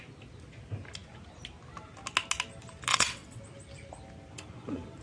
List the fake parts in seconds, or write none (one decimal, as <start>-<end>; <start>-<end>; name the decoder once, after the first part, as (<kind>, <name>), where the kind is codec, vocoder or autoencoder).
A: 2.9-3.4 (vocoder, WaveNeXt)

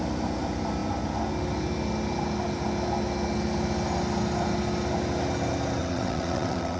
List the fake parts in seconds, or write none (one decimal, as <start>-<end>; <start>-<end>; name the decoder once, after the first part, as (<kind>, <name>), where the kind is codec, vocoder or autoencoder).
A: 5.8-6.8 (vocoder, WaveNeXt)

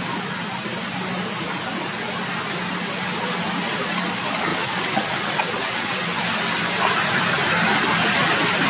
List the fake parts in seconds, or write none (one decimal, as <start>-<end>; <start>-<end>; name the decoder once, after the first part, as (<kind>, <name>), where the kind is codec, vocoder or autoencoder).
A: 4.5-6.2 (vocoder, WaveNeXt)

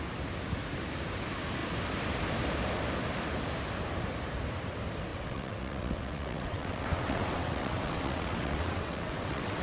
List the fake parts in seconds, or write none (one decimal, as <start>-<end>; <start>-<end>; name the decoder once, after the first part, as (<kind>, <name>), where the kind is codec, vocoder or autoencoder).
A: 5.1-9.6 (vocoder, WaveNeXt)

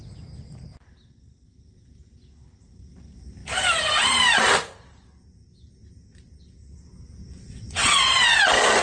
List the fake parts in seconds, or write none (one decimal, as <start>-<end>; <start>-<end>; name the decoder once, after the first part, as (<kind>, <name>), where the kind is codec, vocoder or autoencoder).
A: 7.2-8.4 (vocoder, WaveNeXt)

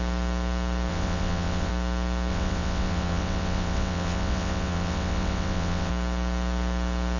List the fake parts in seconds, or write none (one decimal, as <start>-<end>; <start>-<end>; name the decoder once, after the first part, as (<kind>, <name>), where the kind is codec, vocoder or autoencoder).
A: 0.9-1.7 (vocoder, WaveNeXt); 2.3-5.9

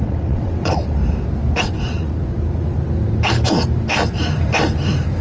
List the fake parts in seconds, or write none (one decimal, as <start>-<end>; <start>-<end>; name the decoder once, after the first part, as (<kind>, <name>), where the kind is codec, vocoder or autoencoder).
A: 0.0-1.0 (vocoder, WaveNeXt); 1.6-2.1

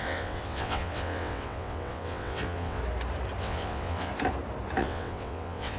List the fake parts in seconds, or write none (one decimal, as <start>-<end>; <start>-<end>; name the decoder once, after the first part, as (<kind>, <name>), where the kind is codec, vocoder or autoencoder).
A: 0.0-2.8 (vocoder, WaveNeXt); 3.4-4.1; 4.8-5.8